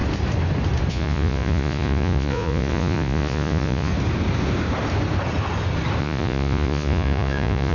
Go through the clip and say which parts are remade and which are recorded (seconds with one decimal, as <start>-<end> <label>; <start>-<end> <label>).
0.0-0.9 recorded; 0.9-3.9 remade; 3.9-6.0 recorded; 6.0-7.7 remade